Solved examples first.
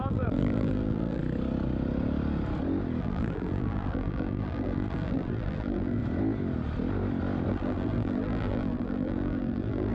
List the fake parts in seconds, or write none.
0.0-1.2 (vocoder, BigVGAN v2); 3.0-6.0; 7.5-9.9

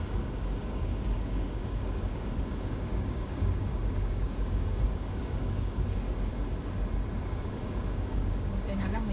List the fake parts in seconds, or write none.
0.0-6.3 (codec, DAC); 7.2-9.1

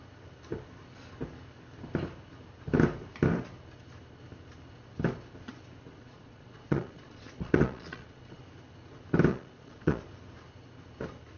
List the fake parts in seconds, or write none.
5.9-8.4 (vocoder, Vocos); 9.3-10.0